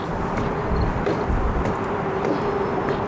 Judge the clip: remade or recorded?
recorded